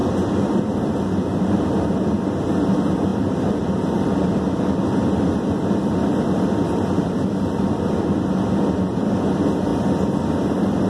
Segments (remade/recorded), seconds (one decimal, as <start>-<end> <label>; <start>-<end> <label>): 0.0-3.1 recorded; 3.1-7.8 remade; 7.8-10.9 recorded